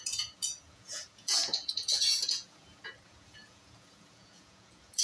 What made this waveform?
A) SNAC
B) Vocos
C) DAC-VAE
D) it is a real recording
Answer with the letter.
B